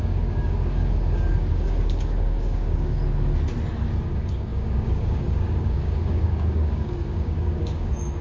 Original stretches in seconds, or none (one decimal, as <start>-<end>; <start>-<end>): 3.0-3.9